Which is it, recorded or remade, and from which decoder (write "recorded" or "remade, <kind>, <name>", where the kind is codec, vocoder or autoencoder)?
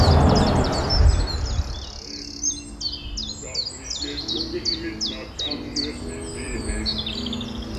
recorded